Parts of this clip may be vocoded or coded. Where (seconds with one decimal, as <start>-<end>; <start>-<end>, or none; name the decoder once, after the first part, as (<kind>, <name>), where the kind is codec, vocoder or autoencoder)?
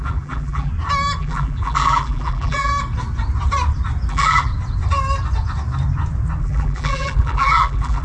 0.0-0.7 (vocoder, BigVGAN v2); 1.2-2.7; 4.1-4.5; 6.4-8.0